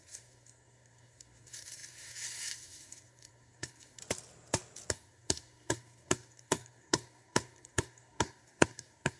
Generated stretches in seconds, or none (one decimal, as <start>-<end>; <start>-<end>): 0.0-4.0; 4.9-9.2